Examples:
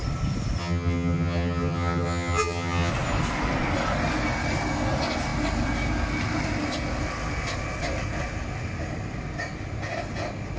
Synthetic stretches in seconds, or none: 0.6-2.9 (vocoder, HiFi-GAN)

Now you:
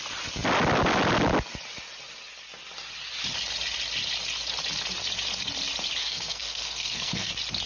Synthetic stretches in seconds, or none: 6.0-7.3 (codec, SNAC)

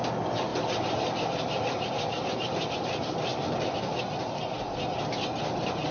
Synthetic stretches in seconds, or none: 0.5-4.0 (vocoder, BigVGAN v2)

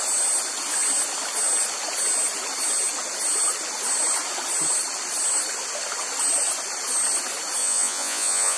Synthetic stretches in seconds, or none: 7.6-8.6 (vocoder, Vocos)

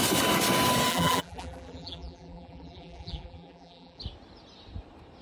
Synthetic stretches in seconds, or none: 0.9-4.0 (vocoder, BigVGAN v2)

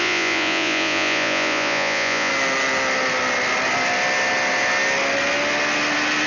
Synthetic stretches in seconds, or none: 0.0-2.3 (vocoder, Vocos)

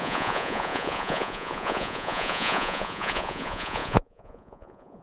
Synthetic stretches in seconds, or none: 0.0-5.0 (vocoder, Vocos)

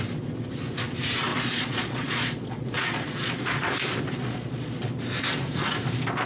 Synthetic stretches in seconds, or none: 1.3-3.7 (vocoder, Vocos); 4.2-4.9